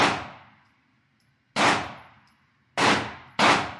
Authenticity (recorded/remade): recorded